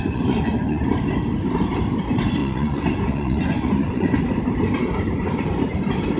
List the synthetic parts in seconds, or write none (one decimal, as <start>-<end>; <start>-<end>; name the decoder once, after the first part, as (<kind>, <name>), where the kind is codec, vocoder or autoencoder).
0.0-0.9 (vocoder, Vocos); 2.4-4.2